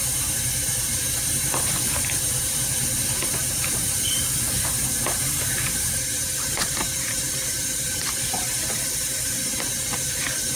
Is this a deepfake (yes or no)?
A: yes